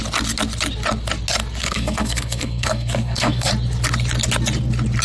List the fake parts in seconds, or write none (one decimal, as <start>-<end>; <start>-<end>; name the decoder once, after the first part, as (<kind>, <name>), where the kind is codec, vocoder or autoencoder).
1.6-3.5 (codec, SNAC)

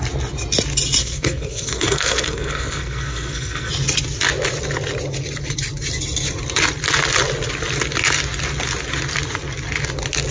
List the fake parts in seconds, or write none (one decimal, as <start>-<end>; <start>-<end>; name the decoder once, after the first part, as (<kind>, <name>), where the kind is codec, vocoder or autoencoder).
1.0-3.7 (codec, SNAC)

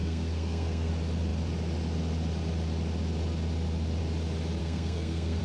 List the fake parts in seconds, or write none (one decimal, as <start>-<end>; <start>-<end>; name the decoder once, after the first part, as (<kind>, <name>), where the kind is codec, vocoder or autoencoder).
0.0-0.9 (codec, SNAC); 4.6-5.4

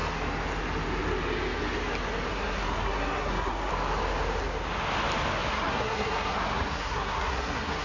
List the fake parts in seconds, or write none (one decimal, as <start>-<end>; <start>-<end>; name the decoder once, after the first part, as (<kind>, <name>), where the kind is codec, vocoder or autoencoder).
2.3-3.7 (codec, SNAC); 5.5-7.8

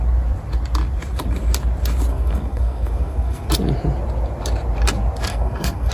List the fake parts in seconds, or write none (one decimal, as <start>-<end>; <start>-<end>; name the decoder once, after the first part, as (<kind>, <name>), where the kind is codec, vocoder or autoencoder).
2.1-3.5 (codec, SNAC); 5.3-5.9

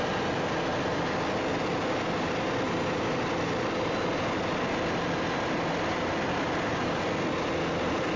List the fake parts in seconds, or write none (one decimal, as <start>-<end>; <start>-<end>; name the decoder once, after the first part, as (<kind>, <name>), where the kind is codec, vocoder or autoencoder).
none

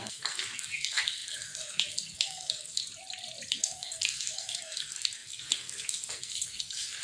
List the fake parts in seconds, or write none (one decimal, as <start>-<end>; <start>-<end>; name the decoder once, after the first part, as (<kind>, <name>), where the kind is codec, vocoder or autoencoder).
0.0-2.8 (codec, SNAC); 3.5-7.0

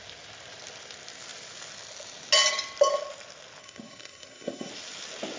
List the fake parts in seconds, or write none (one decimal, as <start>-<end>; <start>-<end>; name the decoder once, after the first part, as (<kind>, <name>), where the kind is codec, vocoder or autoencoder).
3.6-4.7 (codec, SNAC)